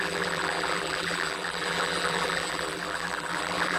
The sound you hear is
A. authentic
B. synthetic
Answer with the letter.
B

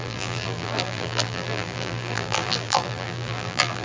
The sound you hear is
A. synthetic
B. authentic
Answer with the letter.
A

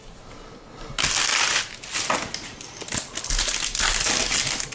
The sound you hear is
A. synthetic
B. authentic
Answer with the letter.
B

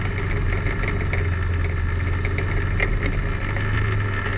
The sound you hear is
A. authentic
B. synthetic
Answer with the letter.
A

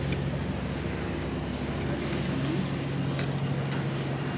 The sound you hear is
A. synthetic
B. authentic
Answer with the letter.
B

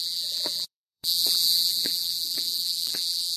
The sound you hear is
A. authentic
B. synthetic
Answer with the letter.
B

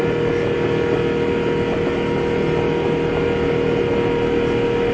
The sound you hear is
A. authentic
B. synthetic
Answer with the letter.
A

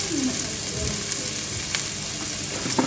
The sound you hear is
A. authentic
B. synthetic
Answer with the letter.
A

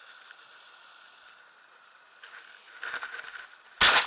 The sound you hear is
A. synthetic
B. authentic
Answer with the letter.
B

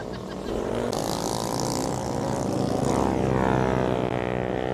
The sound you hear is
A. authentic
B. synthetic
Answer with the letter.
A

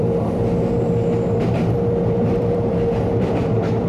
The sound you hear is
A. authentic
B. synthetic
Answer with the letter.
B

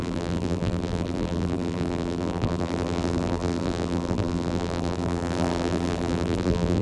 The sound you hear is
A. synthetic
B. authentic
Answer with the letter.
A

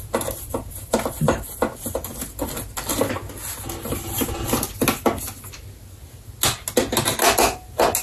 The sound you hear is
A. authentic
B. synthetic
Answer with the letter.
A